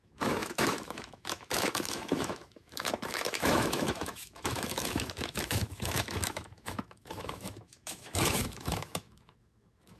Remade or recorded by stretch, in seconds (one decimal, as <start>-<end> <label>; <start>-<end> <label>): 0.0-10.0 remade